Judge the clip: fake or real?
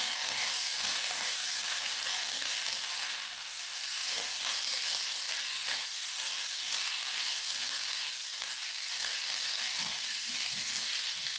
fake